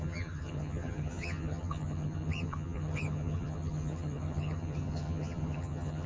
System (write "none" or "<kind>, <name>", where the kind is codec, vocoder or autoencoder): vocoder, HiFi-GAN